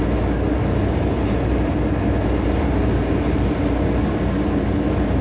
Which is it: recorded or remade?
recorded